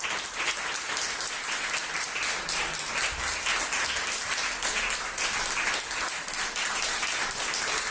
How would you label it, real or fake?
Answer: real